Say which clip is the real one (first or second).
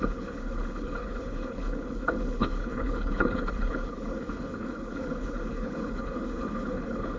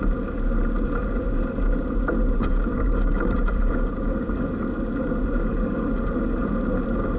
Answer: second